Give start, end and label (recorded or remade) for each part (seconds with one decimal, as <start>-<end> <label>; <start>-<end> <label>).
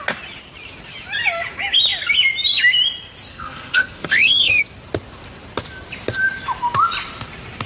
0.0-3.3 recorded; 3.3-4.6 remade; 4.6-7.7 recorded